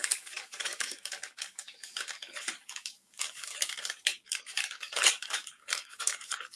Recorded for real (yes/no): no